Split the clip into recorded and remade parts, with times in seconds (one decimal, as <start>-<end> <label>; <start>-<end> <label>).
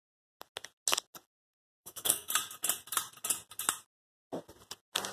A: 0.0-1.5 recorded; 1.5-2.3 remade; 2.3-5.1 recorded